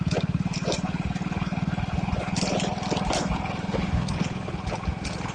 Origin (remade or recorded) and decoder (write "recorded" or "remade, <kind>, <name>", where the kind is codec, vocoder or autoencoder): recorded